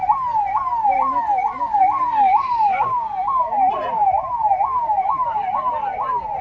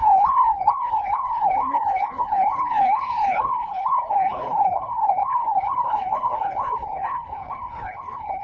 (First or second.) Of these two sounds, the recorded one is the first